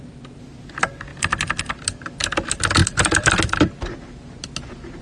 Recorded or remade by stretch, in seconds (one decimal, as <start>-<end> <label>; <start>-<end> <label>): 0.0-1.1 recorded; 1.1-1.6 remade; 1.6-2.8 recorded; 2.8-3.7 remade; 3.7-5.0 recorded